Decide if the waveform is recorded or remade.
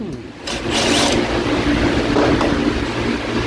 recorded